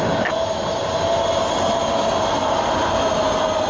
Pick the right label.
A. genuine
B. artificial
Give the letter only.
A